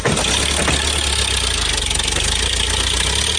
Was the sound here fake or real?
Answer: real